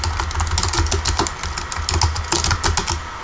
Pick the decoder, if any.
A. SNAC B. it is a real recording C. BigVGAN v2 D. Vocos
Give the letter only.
B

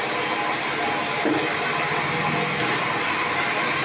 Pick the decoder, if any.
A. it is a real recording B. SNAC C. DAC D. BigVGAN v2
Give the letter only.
A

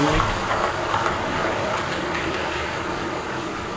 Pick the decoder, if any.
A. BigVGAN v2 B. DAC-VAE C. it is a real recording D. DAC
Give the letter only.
D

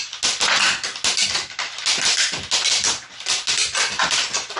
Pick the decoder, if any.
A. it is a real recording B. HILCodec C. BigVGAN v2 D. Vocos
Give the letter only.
A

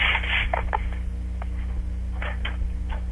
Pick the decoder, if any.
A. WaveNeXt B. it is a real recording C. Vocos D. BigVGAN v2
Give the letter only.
B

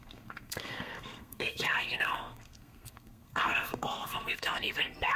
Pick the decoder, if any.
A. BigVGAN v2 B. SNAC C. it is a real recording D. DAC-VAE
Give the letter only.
B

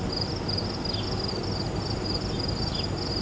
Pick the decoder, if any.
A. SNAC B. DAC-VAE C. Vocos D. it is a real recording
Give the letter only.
D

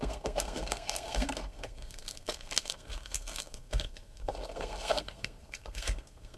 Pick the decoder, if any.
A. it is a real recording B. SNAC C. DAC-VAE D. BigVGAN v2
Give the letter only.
B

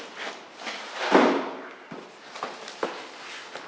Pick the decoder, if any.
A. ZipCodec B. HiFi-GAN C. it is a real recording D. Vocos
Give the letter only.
C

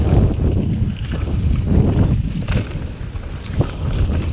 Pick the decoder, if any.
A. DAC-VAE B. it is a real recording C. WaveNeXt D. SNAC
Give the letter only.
B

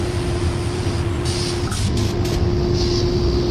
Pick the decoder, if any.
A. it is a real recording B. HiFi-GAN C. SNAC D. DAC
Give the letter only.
A